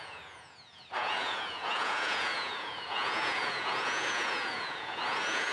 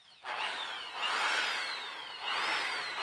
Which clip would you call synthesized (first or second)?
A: first